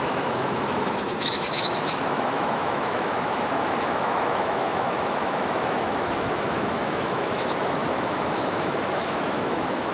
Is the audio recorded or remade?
remade